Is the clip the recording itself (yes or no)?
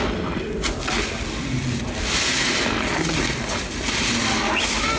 yes